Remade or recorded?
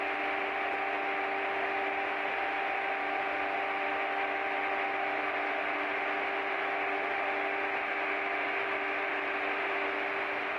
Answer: recorded